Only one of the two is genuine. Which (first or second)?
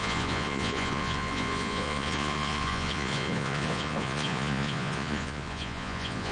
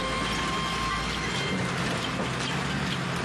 second